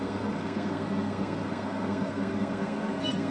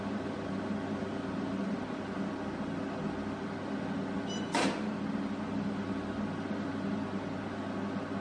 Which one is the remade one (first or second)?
first